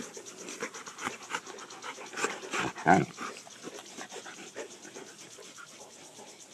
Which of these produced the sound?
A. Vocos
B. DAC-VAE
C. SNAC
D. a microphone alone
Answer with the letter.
D